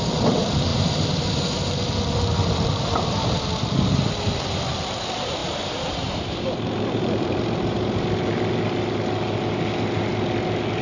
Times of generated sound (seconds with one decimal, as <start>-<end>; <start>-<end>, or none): 5.4-7.8